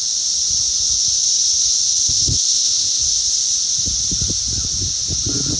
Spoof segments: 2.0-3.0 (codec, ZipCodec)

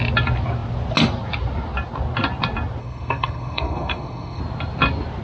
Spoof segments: 2.8-4.4 (codec, SNAC)

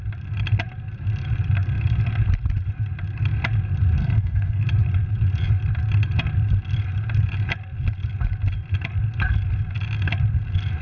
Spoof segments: 4.0-4.6 (codec, SNAC)